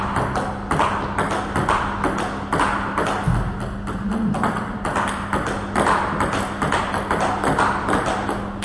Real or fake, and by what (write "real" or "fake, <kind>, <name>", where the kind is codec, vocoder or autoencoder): real